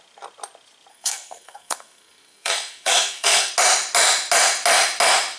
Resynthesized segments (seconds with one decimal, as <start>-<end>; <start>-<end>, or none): 0.9-3.5